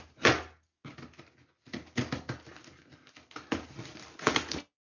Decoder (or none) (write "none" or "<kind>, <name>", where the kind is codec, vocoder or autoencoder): none